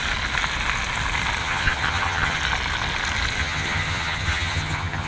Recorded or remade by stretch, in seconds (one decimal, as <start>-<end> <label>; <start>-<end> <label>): 0.0-1.4 recorded; 1.4-2.4 remade; 2.4-3.4 recorded; 3.4-5.1 remade